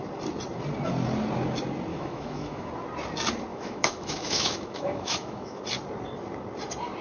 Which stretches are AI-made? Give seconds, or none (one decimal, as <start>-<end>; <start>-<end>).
1.9-2.7; 3.5-5.6